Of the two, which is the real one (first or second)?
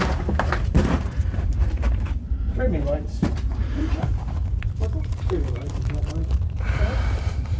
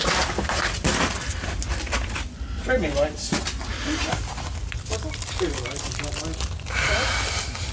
second